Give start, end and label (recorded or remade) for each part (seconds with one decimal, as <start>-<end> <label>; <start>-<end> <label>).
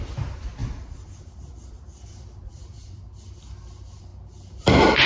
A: 0.0-5.1 recorded